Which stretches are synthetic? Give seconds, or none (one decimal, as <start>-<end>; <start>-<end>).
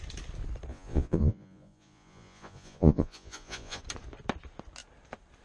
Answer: 0.7-3.8